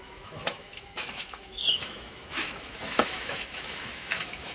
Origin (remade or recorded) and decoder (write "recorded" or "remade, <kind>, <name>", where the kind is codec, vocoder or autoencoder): remade, autoencoder, DAC-VAE